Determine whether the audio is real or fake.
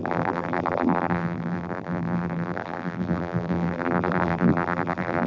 fake